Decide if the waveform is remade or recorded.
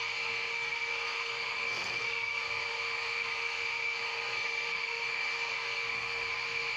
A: remade